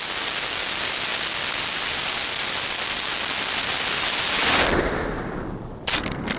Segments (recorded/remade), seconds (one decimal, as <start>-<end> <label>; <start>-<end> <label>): 0.0-6.4 recorded